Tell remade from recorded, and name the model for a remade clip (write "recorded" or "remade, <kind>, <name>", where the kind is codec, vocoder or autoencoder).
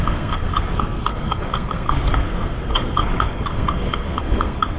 remade, codec, SNAC